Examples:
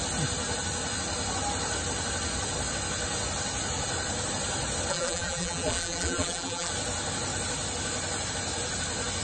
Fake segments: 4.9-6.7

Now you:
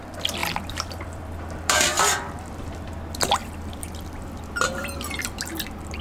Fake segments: 0.4-3.0; 3.4-5.2

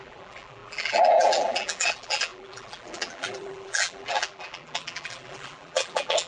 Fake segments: 0.0-6.3

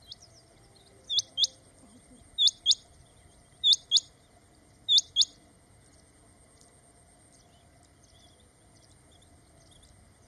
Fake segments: none

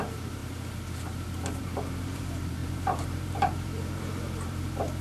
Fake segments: 0.0-5.0

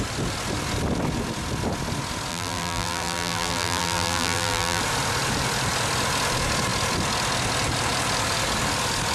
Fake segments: 2.3-4.8

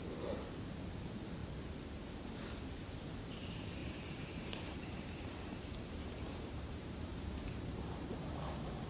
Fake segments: 3.8-8.4

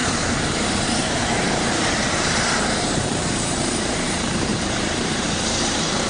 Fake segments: 0.0-6.1